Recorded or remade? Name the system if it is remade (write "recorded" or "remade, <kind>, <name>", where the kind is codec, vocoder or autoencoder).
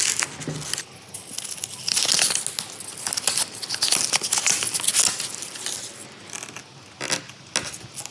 recorded